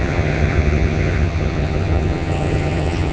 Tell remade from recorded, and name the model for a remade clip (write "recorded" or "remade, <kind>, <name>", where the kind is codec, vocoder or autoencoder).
remade, vocoder, HiFi-GAN